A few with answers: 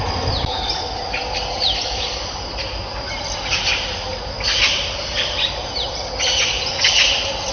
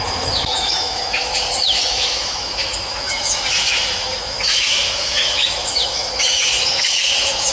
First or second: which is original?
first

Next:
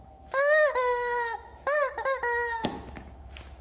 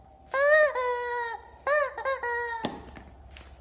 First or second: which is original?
second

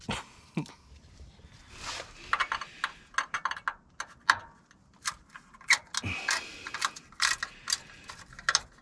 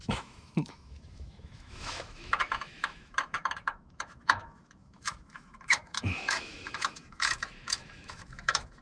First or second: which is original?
first